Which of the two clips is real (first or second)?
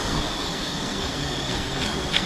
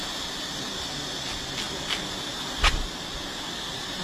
second